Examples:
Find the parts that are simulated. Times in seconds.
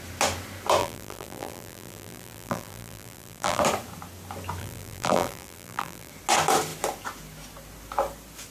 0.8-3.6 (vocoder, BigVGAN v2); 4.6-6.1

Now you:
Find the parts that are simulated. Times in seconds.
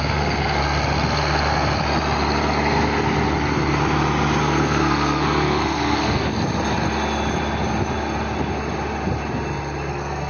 0.0-0.6 (codec, SNAC); 4.4-6.3; 9.9-10.3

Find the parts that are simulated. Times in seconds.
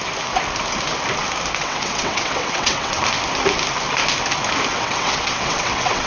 1.6-3.0 (vocoder, WaveNeXt); 4.7-6.1